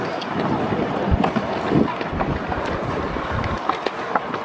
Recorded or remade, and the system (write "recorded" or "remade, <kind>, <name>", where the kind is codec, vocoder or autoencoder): recorded